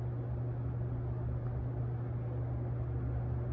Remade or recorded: recorded